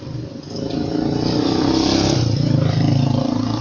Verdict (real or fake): real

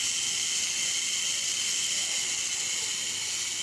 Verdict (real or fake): real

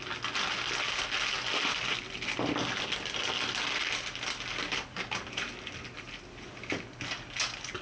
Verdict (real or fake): real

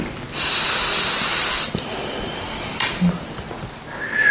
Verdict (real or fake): real